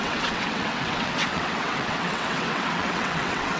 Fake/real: fake